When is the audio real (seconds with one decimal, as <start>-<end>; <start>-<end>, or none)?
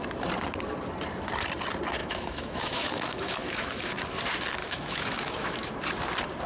0.0-2.0; 3.9-4.6; 5.7-6.5